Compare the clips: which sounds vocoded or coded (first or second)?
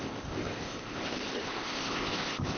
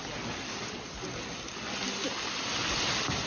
first